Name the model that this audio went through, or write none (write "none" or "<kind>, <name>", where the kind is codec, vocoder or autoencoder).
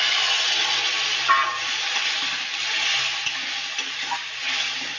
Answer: none